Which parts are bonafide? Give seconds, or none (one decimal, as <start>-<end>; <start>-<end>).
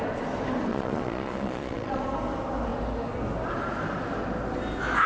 0.0-0.7; 2.0-5.1